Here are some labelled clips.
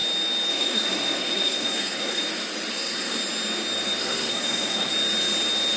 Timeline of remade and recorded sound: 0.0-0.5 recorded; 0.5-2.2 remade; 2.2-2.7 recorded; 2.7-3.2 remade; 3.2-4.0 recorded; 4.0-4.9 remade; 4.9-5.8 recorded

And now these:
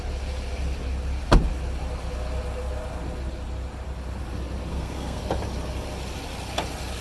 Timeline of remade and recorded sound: 0.0-4.7 recorded; 4.7-5.2 remade; 5.2-7.0 recorded

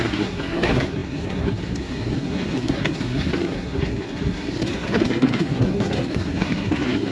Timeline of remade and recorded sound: 0.0-7.1 remade

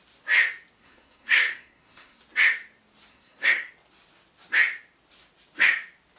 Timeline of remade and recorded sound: 0.0-0.8 recorded; 0.8-2.2 remade; 2.2-3.1 recorded; 3.1-3.7 remade; 3.7-6.2 recorded

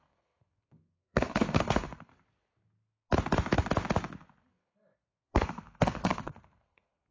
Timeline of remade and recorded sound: 0.0-2.1 remade; 2.1-4.5 recorded; 4.5-7.1 remade

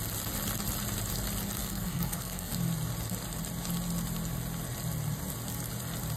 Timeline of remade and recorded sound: 0.0-1.6 recorded; 1.6-2.5 remade; 2.5-6.2 recorded